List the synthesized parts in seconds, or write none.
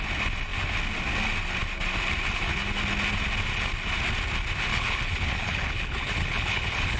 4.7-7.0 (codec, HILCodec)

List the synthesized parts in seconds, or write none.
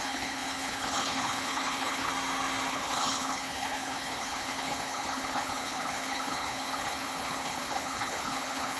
0.0-2.1 (codec, HILCodec); 2.7-8.8